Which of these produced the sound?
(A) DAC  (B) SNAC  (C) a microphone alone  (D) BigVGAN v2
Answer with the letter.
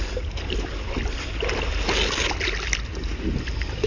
C